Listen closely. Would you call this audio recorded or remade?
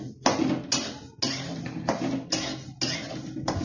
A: recorded